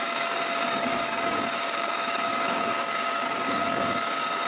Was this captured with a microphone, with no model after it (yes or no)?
no